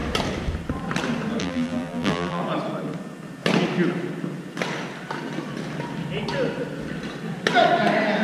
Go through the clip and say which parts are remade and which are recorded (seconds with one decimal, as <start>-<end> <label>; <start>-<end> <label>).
0.0-1.4 recorded; 1.4-2.4 remade; 2.4-8.2 recorded